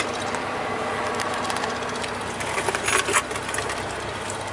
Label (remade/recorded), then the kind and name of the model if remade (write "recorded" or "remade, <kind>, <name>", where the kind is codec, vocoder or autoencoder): recorded